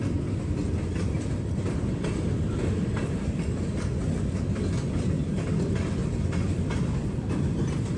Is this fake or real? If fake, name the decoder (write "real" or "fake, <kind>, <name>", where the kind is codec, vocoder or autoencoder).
real